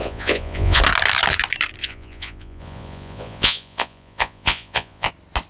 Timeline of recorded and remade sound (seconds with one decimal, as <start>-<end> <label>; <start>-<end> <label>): 0.0-0.8 remade; 0.8-1.8 recorded; 1.8-5.1 remade; 5.1-5.5 recorded